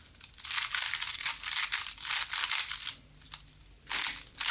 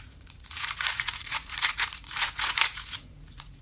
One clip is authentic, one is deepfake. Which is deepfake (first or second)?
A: second